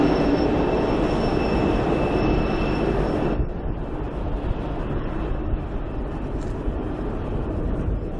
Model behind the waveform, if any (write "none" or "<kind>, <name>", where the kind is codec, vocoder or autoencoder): none